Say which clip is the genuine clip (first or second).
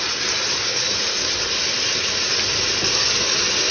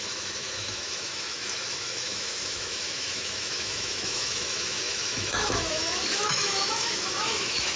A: first